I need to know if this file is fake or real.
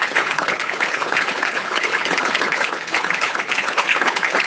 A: fake